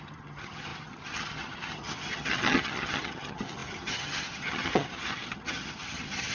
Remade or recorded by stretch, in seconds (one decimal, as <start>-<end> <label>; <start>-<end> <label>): 0.0-6.3 remade